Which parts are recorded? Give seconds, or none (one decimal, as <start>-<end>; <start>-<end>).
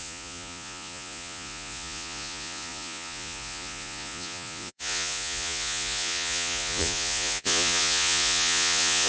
none